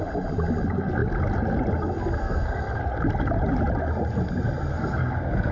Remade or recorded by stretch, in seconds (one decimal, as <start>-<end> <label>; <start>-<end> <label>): 0.0-2.2 recorded; 2.2-2.8 remade; 2.8-4.7 recorded; 4.7-5.5 remade

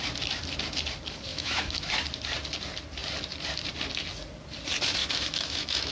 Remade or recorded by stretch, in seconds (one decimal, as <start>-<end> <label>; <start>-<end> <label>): 0.0-1.3 recorded; 1.3-1.9 remade; 1.9-5.0 recorded; 5.0-5.9 remade

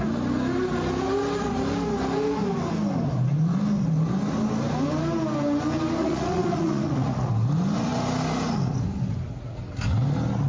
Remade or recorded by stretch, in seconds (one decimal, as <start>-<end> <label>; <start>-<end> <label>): 0.0-6.0 recorded; 6.0-7.3 remade; 7.3-10.5 recorded

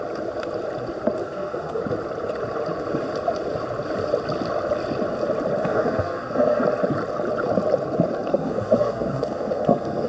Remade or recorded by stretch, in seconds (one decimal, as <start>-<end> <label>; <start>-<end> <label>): 0.0-1.2 recorded; 1.2-1.8 remade; 1.8-5.6 recorded; 5.6-6.6 remade; 6.6-8.3 recorded; 8.3-10.1 remade

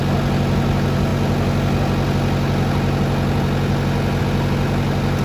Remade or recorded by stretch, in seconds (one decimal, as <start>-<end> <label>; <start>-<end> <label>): 0.0-5.2 recorded